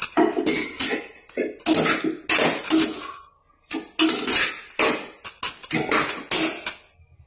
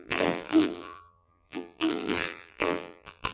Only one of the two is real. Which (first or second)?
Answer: first